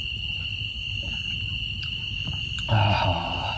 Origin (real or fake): real